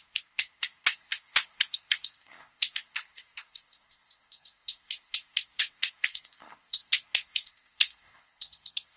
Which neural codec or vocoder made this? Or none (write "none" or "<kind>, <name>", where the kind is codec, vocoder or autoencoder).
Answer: codec, SNAC